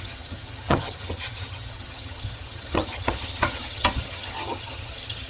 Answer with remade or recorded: remade